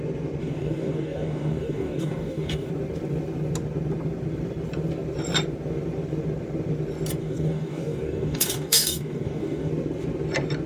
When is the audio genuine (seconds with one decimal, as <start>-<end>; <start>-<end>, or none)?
0.0-0.4; 2.7-7.2; 9.7-10.7